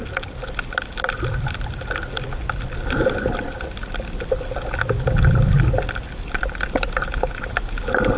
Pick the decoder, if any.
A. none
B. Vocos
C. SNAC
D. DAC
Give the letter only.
A